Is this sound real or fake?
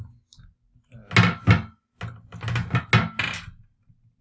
real